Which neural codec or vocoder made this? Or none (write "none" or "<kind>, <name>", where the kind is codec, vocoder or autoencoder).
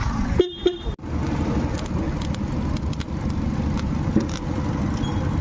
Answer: none